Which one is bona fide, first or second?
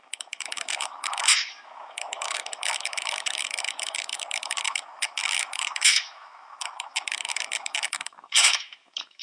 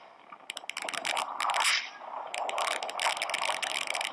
second